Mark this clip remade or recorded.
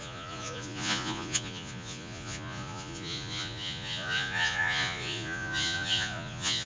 remade